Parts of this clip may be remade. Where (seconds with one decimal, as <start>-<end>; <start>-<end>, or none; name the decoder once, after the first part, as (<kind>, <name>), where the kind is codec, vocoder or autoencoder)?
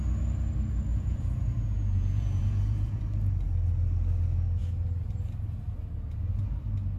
0.9-3.0 (vocoder, Vocos)